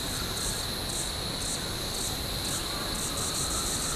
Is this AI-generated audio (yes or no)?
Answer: no